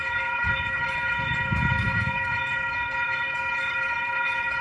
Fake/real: fake